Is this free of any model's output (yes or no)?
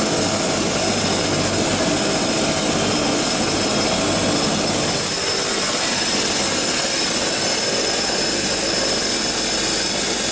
yes